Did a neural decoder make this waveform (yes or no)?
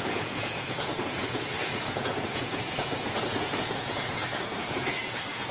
yes